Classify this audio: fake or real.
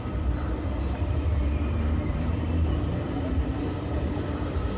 fake